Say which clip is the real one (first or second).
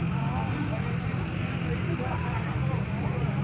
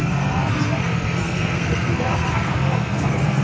first